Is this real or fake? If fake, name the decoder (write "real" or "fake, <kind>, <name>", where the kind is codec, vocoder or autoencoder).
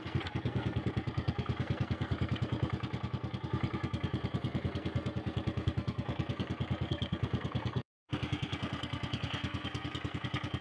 fake, codec, SNAC